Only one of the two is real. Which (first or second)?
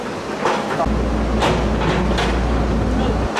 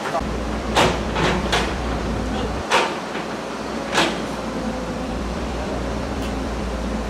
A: first